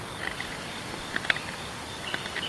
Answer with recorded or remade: recorded